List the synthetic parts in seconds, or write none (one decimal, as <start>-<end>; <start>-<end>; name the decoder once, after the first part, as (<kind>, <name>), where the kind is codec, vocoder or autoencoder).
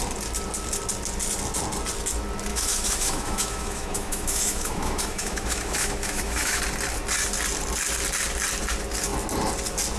2.5-6.6 (autoencoder, DAC-VAE)